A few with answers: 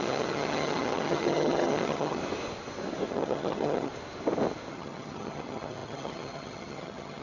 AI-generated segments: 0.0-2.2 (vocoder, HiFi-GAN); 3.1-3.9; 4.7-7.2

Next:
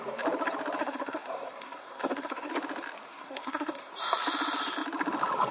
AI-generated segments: 0.8-2.5 (codec, SNAC); 3.1-3.9

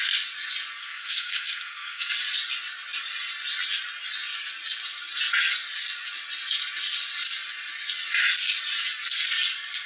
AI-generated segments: 0.8-2.1 (codec, SNAC)

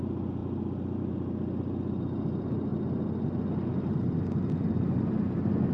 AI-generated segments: none

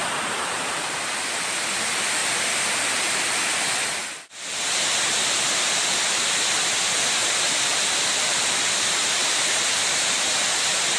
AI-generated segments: 0.0-0.9 (vocoder, BigVGAN v2); 7.2-10.1

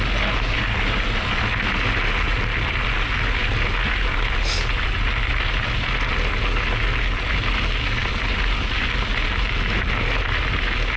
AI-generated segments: none

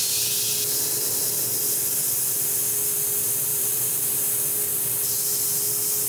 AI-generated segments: 3.5-4.0 (vocoder, BigVGAN v2)